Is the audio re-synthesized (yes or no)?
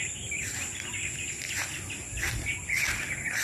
no